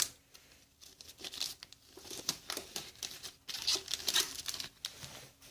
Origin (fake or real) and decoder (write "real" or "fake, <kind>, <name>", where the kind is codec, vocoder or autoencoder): real